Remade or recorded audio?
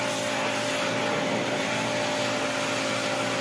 recorded